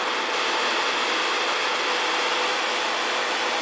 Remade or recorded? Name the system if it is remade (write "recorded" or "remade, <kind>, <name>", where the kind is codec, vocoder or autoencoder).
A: recorded